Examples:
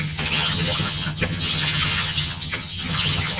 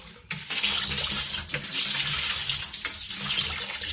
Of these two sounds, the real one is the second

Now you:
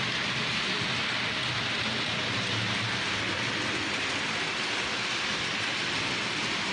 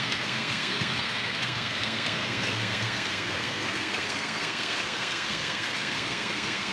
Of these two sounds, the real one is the first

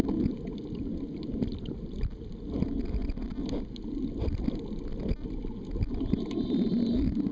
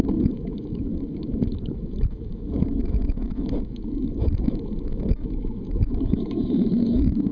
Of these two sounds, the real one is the first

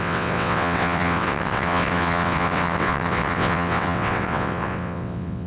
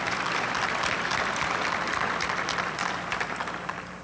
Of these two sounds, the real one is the second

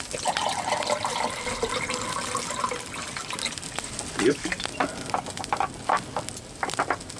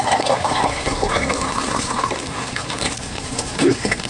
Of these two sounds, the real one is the first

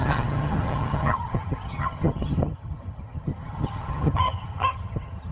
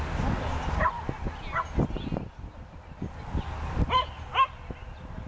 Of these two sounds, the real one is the second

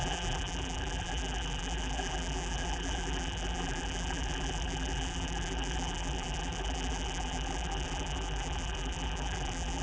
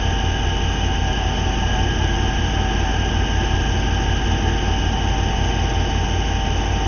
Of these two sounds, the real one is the second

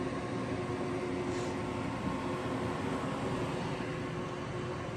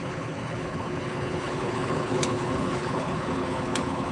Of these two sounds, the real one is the first